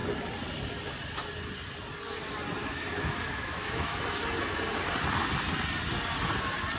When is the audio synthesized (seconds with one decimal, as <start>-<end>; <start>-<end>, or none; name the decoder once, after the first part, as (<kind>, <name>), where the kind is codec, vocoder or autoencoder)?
2.6-4.0 (autoencoder, DAC-VAE)